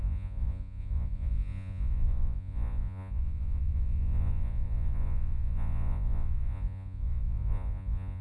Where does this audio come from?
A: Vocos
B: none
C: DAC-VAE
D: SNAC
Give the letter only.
A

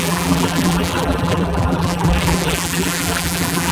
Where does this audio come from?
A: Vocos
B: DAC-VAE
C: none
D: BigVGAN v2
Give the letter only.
D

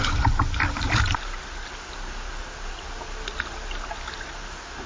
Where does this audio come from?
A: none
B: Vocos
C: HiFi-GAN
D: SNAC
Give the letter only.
A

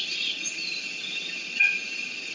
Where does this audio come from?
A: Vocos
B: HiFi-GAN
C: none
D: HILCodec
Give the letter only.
B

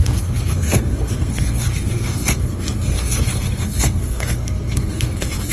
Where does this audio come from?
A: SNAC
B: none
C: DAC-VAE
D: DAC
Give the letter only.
A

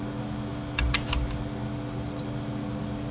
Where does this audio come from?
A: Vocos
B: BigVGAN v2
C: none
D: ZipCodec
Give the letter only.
C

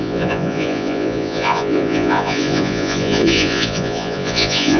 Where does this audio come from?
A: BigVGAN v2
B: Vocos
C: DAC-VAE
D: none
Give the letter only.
B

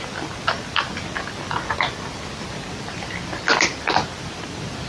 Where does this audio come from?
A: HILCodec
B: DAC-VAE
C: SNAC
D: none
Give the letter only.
D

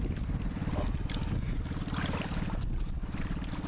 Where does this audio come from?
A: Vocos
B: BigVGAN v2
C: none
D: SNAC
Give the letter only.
C